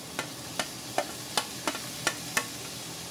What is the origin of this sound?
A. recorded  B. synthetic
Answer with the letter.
A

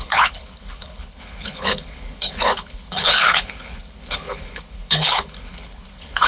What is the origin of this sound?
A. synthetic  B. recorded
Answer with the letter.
A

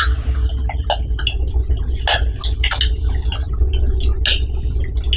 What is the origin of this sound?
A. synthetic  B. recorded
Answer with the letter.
B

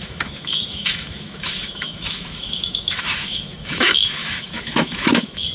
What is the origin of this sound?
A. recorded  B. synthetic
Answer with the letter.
B